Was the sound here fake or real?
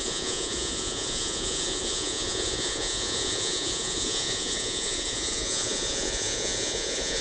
fake